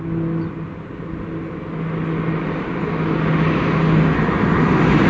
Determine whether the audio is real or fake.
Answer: real